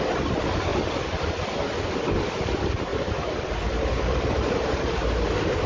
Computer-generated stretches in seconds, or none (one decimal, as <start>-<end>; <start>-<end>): 2.9-4.8